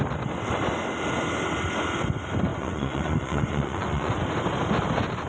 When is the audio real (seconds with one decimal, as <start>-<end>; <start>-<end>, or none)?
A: 0.0-2.5; 4.1-5.3